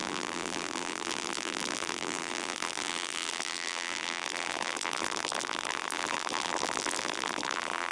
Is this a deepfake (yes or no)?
yes